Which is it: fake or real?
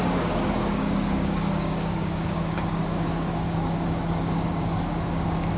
fake